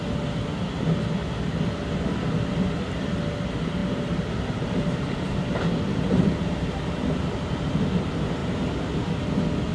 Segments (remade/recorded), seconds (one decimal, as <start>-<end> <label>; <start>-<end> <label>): 0.0-3.8 recorded; 3.8-7.3 remade; 7.3-9.7 recorded